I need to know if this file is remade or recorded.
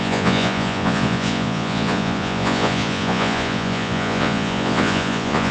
remade